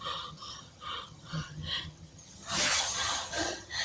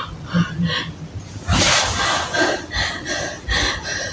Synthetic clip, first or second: first